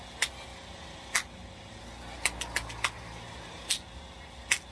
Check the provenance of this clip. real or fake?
real